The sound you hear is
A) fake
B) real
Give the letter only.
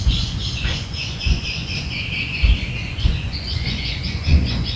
A